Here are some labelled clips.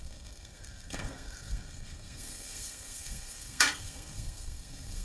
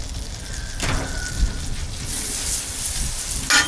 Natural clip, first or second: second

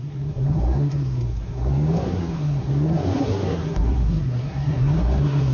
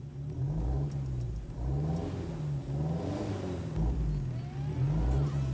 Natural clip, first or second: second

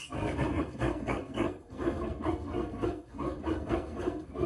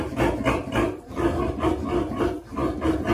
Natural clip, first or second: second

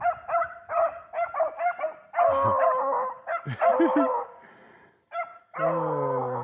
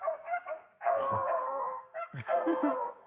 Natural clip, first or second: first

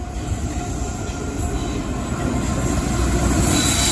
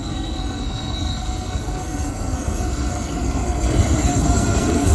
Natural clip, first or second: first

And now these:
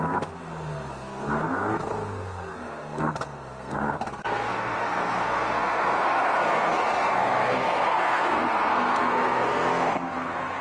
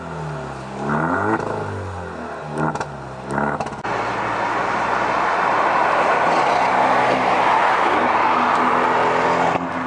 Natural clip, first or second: second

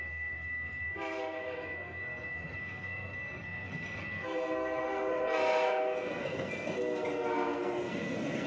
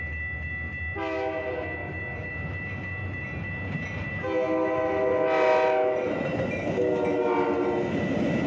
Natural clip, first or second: second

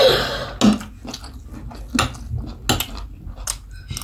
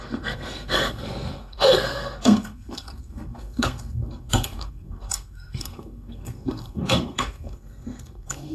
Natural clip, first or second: first